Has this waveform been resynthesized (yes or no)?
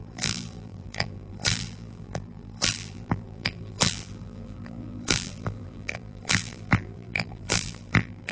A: yes